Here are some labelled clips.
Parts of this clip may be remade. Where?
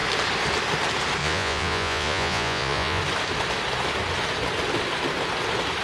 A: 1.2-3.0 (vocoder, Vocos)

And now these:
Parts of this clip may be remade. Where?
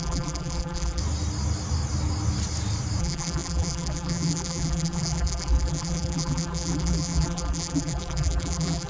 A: 0.0-1.0 (vocoder, BigVGAN v2); 3.0-8.9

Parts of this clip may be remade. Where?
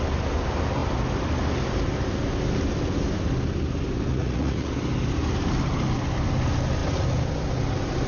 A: 4.1-4.7 (vocoder, Vocos)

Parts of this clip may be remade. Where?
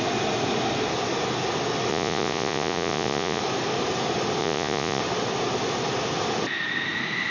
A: 1.9-3.4 (vocoder, Vocos); 4.4-5.0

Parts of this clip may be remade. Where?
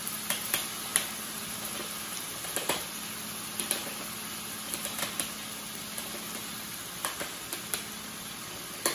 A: none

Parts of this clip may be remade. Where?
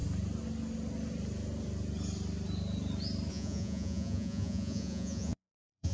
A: 3.3-5.9 (vocoder, Vocos)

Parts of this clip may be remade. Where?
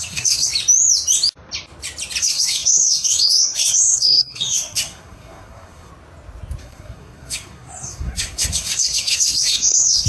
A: 0.0-0.5 (codec, SNAC); 2.2-5.9; 6.6-10.1